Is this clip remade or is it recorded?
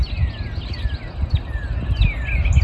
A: recorded